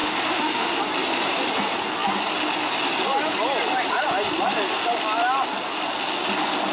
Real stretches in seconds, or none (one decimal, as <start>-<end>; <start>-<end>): 0.8-6.7